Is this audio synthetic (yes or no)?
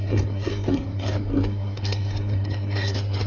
yes